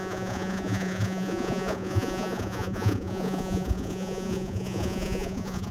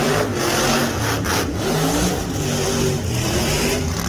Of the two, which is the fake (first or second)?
first